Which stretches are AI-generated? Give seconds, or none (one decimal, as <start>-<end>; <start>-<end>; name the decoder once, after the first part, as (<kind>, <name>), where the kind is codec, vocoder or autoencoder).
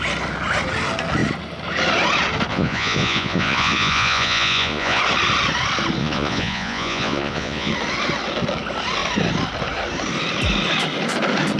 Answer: 2.5-5.0 (vocoder, Vocos); 6.0-7.7